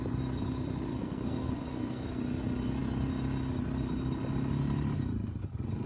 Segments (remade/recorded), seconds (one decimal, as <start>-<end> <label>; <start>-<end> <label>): 0.0-0.9 recorded; 0.9-2.2 remade; 2.2-5.9 recorded

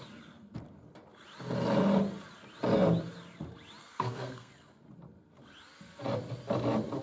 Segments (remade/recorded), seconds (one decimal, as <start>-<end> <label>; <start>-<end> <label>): 0.0-3.8 recorded; 3.8-4.5 remade; 4.5-7.0 recorded

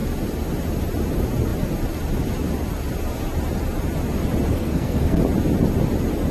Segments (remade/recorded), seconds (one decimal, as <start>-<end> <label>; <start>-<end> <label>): 0.0-4.5 recorded; 4.5-5.2 remade; 5.2-6.3 recorded